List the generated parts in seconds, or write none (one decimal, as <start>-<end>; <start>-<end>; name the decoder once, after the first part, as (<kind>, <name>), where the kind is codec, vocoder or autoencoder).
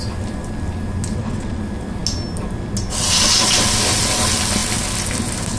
1.1-1.6 (vocoder, WaveNeXt)